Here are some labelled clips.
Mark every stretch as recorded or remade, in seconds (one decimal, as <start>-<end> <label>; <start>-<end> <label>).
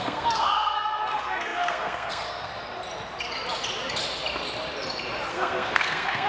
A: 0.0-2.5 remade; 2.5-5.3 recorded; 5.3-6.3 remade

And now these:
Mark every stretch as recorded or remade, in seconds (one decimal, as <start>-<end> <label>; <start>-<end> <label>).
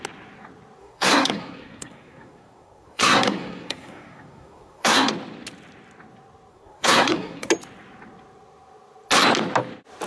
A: 0.0-0.8 recorded; 0.8-5.1 remade; 5.1-6.5 recorded; 6.5-7.5 remade; 7.5-10.1 recorded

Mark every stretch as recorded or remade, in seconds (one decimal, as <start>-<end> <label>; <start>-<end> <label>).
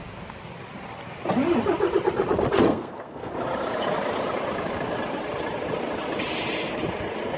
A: 0.0-2.7 recorded; 2.7-3.3 remade; 3.3-7.4 recorded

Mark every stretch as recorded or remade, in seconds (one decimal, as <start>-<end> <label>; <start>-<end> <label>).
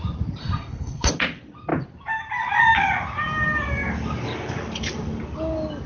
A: 0.0-0.4 recorded; 0.4-1.1 remade; 1.1-5.9 recorded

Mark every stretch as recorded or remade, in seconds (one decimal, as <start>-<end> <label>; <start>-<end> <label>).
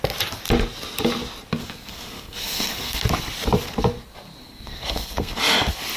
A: 0.0-1.6 recorded; 1.6-3.0 remade; 3.0-4.4 recorded; 4.4-5.4 remade; 5.4-6.0 recorded